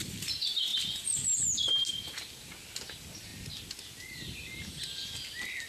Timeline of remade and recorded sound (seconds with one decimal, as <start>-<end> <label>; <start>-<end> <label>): 0.0-5.7 recorded